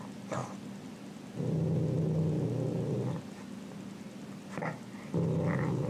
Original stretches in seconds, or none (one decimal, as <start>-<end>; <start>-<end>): 0.4-3.7